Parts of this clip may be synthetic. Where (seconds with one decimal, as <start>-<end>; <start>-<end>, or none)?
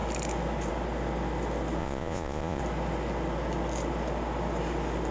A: 1.8-2.6